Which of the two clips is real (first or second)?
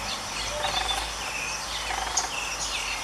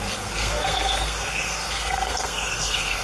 first